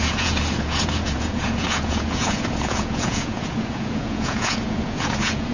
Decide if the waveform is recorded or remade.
remade